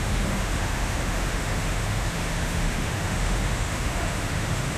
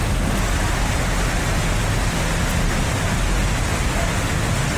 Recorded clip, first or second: second